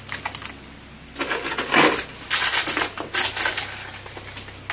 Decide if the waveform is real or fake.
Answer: real